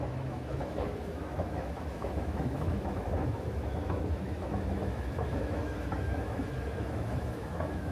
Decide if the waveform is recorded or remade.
remade